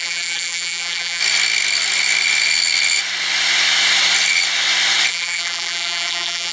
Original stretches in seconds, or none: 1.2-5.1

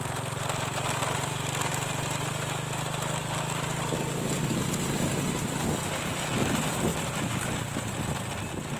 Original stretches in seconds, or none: 0.0-6.9; 8.0-8.8

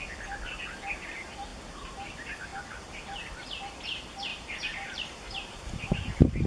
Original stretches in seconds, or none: 0.0-1.5; 2.1-2.5; 3.3-4.3

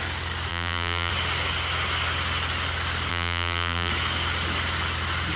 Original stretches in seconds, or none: 0.0-0.5; 1.1-3.1; 3.9-5.4

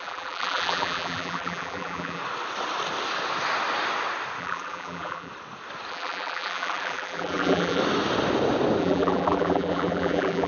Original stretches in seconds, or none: 2.2-4.4; 5.3-5.9; 7.8-8.8

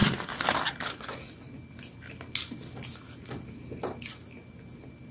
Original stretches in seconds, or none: 0.7-5.1